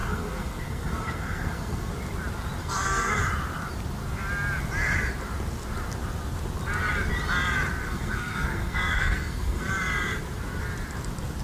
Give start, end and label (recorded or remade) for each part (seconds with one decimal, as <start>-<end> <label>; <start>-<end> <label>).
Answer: 0.0-1.9 remade; 1.9-2.6 recorded; 2.6-3.2 remade; 3.2-7.8 recorded; 7.8-9.7 remade; 9.7-11.4 recorded

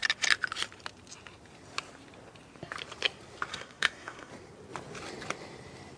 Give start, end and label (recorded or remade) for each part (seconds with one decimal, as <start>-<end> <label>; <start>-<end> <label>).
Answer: 0.0-3.5 recorded; 3.5-4.3 remade; 4.3-6.0 recorded

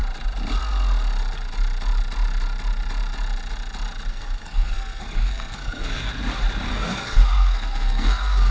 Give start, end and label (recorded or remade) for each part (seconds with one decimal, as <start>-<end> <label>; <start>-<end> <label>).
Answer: 0.0-4.1 recorded; 4.1-6.1 remade; 6.1-6.7 recorded; 6.7-8.5 remade

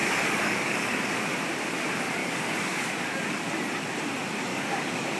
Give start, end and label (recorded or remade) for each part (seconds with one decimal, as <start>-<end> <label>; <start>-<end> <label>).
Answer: 0.0-1.2 remade; 1.2-2.2 recorded; 2.2-3.5 remade; 3.5-4.5 recorded; 4.5-5.2 remade

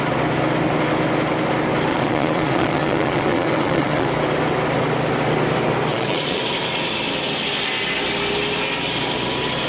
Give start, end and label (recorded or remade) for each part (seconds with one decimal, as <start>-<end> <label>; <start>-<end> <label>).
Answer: 0.0-1.9 recorded; 1.9-4.1 remade; 4.1-5.9 recorded; 5.9-6.4 remade; 6.4-9.7 recorded

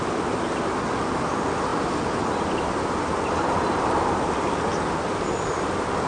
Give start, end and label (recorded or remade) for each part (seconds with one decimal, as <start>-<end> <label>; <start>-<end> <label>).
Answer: 0.0-6.1 recorded

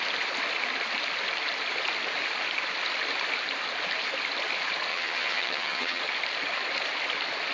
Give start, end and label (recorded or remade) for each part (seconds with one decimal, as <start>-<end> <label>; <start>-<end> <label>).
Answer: 0.0-4.9 recorded; 4.9-6.0 remade; 6.0-7.5 recorded